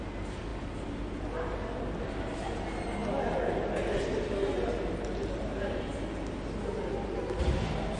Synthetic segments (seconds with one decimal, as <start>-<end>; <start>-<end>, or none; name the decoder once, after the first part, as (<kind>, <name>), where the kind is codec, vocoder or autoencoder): none